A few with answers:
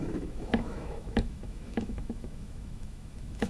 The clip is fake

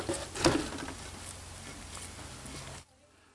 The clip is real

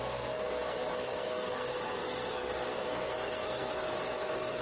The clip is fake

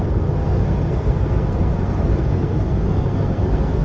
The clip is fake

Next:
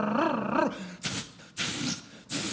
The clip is real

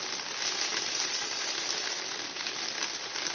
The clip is real